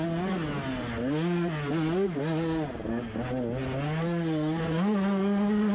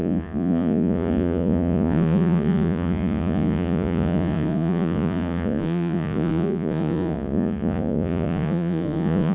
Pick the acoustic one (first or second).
first